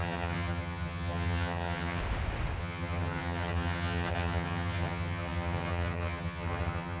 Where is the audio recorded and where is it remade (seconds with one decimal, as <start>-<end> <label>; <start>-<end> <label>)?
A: 0.0-2.0 remade; 2.0-2.6 recorded; 2.6-7.0 remade